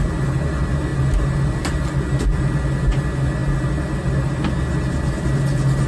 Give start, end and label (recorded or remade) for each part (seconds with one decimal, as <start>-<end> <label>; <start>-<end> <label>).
0.0-5.9 recorded